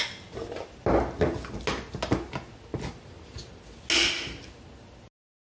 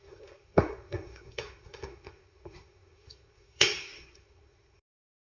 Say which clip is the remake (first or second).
second